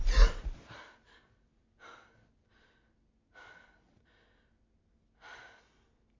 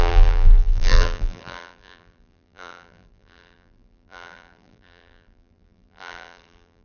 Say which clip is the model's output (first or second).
second